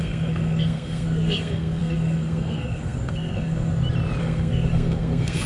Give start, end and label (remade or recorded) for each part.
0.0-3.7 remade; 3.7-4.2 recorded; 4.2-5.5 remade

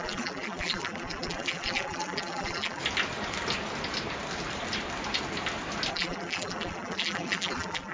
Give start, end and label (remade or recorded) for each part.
0.0-2.8 remade; 2.8-5.9 recorded; 5.9-7.9 remade

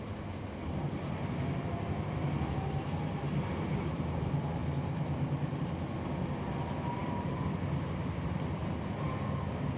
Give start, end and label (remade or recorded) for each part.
0.0-9.8 recorded

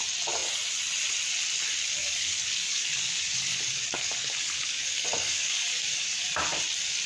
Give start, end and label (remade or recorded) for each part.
0.0-2.0 recorded; 2.0-6.3 remade; 6.3-7.1 recorded

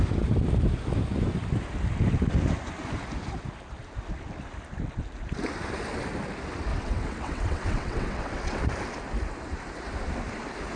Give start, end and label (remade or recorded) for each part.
0.0-6.7 recorded; 6.7-8.6 remade; 8.6-10.8 recorded

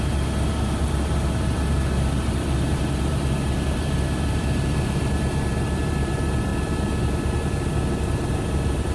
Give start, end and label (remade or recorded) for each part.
0.0-6.5 remade; 6.5-7.4 recorded; 7.4-8.9 remade

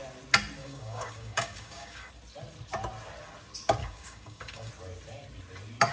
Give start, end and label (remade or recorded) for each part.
0.0-0.6 recorded; 0.6-2.1 remade; 2.1-3.8 recorded; 3.8-4.7 remade; 4.7-5.9 recorded